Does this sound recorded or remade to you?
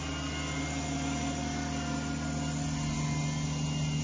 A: recorded